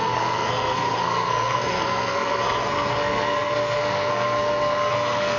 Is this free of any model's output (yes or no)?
no